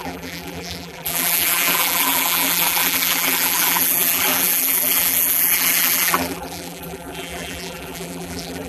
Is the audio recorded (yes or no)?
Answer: no